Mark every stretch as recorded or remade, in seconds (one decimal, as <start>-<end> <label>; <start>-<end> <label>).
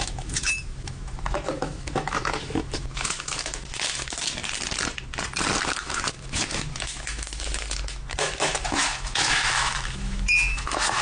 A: 0.0-4.4 remade; 4.4-5.7 recorded; 5.7-11.0 remade